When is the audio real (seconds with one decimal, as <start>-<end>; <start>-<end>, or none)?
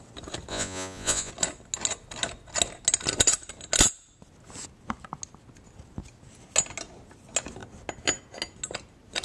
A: 0.0-0.5; 1.3-9.2